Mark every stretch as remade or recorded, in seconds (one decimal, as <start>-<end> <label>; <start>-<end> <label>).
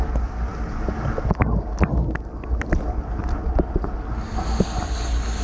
0.0-5.4 recorded